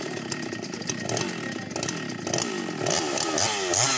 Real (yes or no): yes